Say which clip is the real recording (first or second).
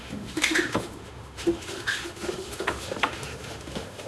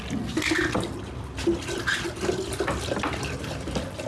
second